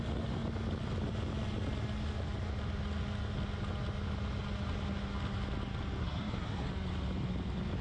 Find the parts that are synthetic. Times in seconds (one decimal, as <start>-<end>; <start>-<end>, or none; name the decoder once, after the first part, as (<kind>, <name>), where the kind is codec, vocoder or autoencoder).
6.0-6.7 (codec, SNAC)